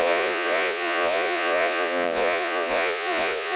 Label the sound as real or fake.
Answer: fake